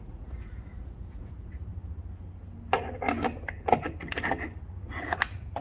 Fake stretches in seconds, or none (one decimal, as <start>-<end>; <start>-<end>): 0.0-1.7; 4.8-5.6